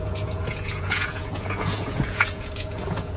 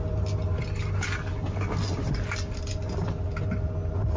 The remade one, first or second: first